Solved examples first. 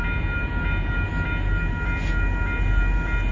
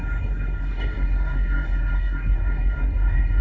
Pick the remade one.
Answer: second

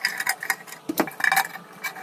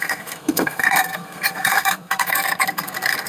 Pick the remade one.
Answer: second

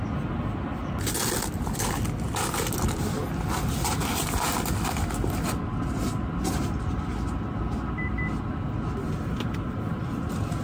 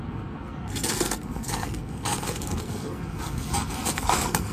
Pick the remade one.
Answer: second